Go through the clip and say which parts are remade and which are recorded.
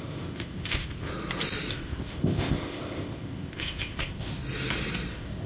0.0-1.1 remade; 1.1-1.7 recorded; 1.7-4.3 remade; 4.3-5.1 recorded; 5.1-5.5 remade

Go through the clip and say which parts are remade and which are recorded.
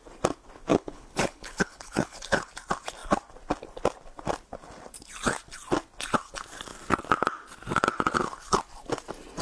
0.0-0.7 recorded; 0.7-2.5 remade; 2.5-9.4 recorded